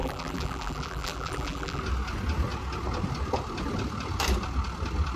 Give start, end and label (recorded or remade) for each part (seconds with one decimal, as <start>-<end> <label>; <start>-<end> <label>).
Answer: 0.0-1.8 remade; 1.8-5.2 recorded